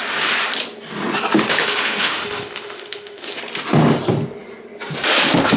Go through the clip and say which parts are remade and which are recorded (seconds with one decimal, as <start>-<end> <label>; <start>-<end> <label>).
0.0-1.5 recorded; 1.5-3.4 remade; 3.4-5.6 recorded